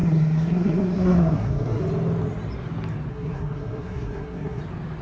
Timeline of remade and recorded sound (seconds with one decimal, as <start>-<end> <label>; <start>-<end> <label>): 0.0-1.8 remade; 1.8-3.1 recorded; 3.1-4.6 remade; 4.6-5.0 recorded